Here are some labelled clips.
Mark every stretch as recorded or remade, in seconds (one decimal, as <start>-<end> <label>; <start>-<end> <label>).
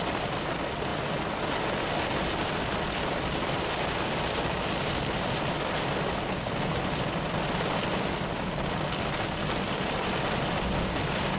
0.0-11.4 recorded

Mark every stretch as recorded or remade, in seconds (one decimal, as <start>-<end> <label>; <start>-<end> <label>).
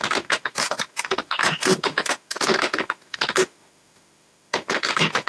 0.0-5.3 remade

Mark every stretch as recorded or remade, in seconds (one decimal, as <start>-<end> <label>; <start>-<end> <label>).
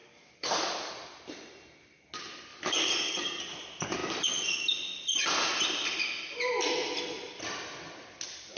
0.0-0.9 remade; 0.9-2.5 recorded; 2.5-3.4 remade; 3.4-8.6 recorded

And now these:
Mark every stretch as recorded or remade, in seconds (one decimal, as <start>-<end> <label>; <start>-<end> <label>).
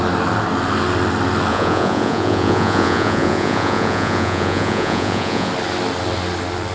0.0-1.5 recorded; 1.5-5.5 remade; 5.5-6.7 recorded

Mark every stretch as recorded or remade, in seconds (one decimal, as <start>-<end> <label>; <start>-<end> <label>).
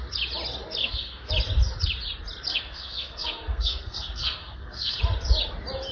0.0-0.8 recorded; 0.8-1.3 remade; 1.3-2.5 recorded; 2.5-5.0 remade; 5.0-5.9 recorded